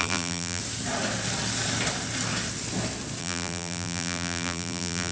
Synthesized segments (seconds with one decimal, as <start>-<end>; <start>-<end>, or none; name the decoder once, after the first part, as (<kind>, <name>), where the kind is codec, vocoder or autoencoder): 0.0-0.6 (vocoder, BigVGAN v2); 3.2-5.1